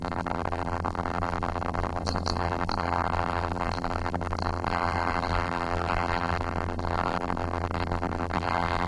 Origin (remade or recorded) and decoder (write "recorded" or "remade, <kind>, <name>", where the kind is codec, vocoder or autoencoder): remade, vocoder, BigVGAN v2